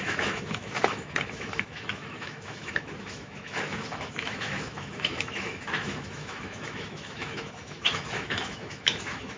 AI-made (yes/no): yes